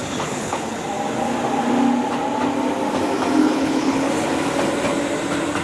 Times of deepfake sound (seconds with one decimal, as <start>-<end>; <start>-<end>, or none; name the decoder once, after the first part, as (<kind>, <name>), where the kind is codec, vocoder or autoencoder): 0.0-0.8 (codec, HILCodec); 3.4-4.1

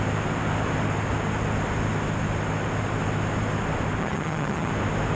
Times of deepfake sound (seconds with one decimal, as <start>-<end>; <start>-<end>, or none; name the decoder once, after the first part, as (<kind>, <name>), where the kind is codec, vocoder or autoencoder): 4.0-4.7 (vocoder, HiFi-GAN)

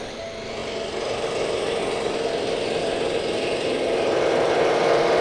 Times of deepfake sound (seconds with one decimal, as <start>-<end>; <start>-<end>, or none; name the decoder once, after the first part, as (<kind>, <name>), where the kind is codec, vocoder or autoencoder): 2.8-5.2 (vocoder, BigVGAN v2)

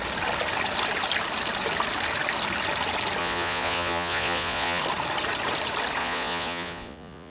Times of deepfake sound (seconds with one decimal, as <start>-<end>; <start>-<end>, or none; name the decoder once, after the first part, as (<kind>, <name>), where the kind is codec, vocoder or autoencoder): 3.2-4.8 (vocoder, Vocos); 6.0-7.3

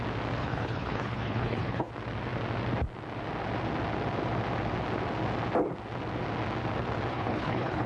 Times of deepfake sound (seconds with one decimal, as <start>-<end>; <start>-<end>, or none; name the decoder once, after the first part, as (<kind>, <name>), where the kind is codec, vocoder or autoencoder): 0.4-1.9 (codec, HILCodec); 7.1-7.9